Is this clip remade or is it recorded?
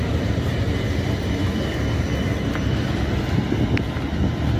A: recorded